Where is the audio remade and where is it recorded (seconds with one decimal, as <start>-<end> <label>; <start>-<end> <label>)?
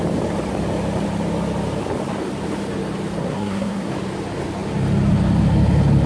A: 0.0-3.2 recorded; 3.2-3.9 remade; 3.9-6.1 recorded